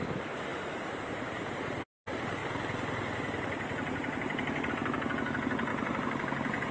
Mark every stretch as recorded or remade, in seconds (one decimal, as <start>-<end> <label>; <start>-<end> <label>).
0.0-0.5 recorded; 0.5-1.0 remade; 1.0-5.7 recorded; 5.7-6.7 remade

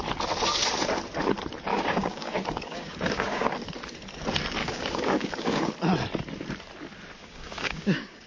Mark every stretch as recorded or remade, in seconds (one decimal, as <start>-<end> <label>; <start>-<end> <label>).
0.0-1.7 recorded; 1.7-3.5 remade; 3.5-4.6 recorded; 4.6-5.7 remade; 5.7-7.2 recorded; 7.2-8.3 remade

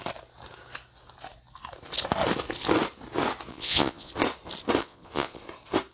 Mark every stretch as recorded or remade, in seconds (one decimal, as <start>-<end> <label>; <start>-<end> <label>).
0.0-3.5 recorded; 3.5-4.1 remade; 4.1-4.8 recorded; 4.8-5.4 remade; 5.4-5.9 recorded

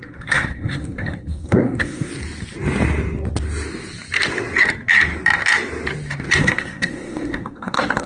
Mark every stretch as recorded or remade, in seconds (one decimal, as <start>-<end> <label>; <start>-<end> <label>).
0.0-2.1 remade; 2.1-6.4 recorded; 6.4-8.1 remade